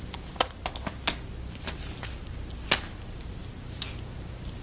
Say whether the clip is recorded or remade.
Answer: recorded